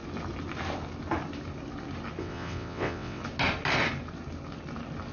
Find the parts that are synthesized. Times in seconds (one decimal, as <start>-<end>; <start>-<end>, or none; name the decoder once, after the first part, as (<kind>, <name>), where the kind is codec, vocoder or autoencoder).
2.2-3.2 (vocoder, WaveNeXt)